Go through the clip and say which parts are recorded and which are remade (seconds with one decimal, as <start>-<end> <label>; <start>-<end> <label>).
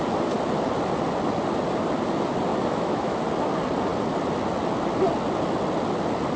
0.0-2.5 recorded; 2.5-3.2 remade; 3.2-6.4 recorded